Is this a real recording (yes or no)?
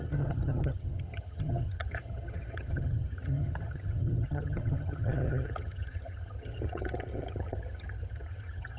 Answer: no